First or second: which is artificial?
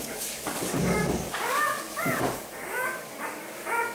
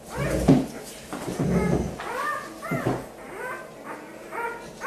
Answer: first